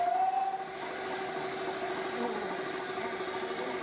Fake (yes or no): no